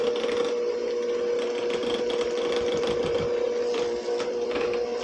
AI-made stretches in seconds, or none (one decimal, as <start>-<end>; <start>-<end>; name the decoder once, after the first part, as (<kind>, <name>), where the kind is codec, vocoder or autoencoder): 1.8-5.0 (vocoder, BigVGAN v2)